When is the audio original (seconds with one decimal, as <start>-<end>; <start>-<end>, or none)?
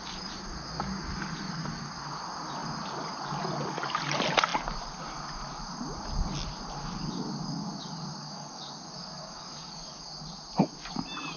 0.0-8.1; 10.0-11.4